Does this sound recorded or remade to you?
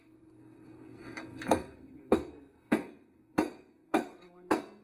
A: remade